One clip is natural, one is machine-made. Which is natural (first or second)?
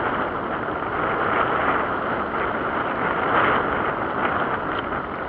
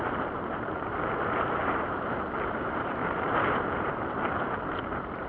first